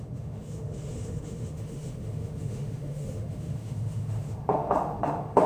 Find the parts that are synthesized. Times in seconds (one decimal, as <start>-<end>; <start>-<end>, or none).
0.0-5.5